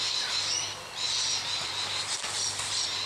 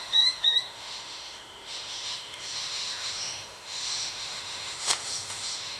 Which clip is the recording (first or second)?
first